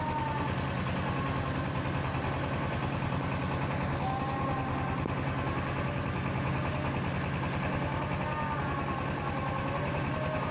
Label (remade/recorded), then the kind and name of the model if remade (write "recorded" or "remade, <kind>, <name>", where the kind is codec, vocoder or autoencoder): recorded